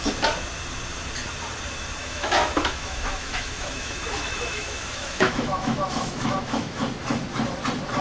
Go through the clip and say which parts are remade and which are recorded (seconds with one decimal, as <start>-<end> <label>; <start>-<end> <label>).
0.0-2.0 recorded; 2.0-6.8 remade; 6.8-8.0 recorded